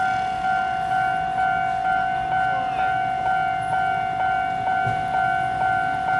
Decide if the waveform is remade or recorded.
recorded